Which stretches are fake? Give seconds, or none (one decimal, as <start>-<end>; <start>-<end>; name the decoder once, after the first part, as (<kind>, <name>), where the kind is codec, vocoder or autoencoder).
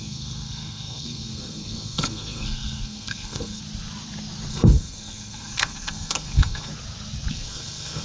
0.0-3.6 (codec, SNAC); 4.5-6.7; 7.3-8.0